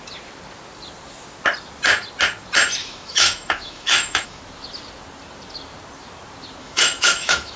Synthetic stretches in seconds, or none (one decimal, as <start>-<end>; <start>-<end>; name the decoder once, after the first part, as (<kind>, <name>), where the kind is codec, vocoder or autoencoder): 2.8-4.4 (autoencoder, DAC-VAE); 6.6-7.6